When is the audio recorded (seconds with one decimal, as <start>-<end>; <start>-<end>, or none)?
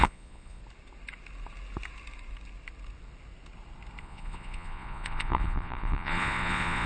0.6-4.0